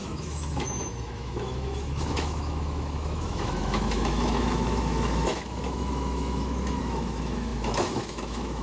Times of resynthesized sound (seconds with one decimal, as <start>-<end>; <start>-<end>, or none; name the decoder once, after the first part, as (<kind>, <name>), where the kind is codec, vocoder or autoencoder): 0.0-8.6 (autoencoder, DAC-VAE)